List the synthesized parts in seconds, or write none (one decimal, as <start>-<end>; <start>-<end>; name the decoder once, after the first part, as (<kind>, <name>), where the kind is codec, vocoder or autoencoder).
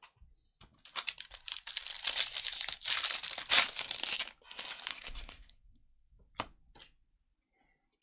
4.9-6.2 (codec, SNAC)